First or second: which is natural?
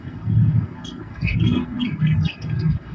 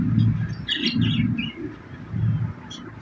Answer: second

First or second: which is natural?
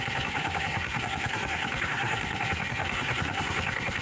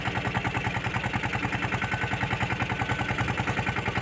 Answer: second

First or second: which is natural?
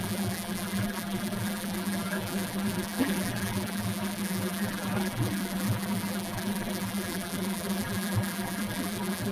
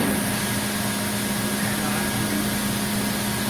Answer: second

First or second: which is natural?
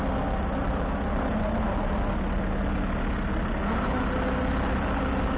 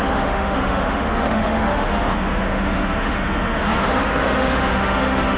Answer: first